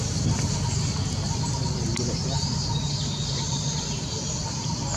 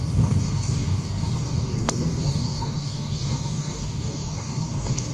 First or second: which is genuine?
first